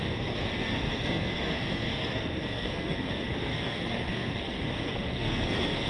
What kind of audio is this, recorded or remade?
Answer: remade